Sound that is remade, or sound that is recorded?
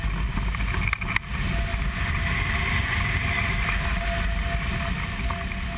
recorded